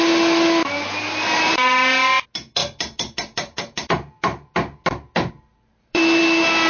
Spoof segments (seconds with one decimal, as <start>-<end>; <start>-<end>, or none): 0.6-1.5; 2.6-3.9; 5.7-6.2